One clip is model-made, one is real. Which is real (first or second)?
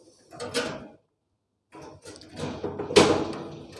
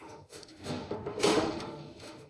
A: first